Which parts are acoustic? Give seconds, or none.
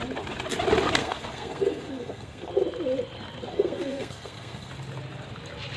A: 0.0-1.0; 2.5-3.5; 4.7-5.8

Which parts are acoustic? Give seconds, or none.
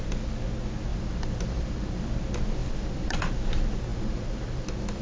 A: 0.0-0.9; 2.1-2.6; 3.3-3.9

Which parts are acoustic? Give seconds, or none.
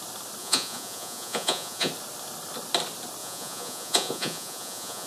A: 0.0-0.4; 1.9-3.2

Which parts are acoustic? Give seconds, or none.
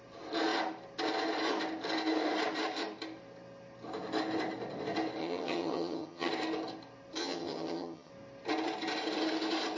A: 0.0-5.2; 6.3-7.2; 8.1-9.8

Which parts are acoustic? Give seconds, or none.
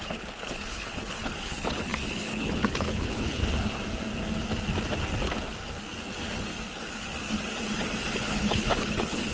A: 3.4-8.1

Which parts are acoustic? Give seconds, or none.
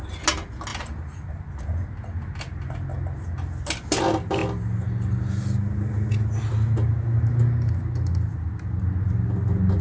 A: 0.0-9.8